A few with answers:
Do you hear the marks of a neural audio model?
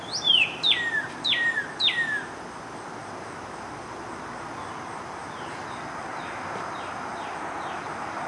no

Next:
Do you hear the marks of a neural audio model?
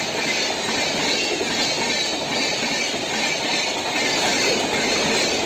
no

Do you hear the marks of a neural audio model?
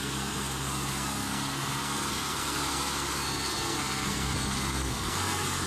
yes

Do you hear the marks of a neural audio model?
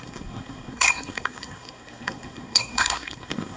yes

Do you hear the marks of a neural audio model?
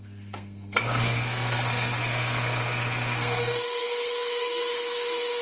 yes